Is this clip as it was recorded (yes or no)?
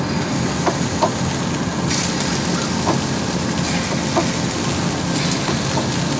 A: yes